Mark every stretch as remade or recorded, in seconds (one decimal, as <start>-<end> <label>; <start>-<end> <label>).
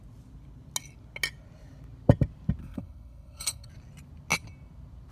0.0-2.6 recorded; 2.6-3.7 remade; 3.7-5.1 recorded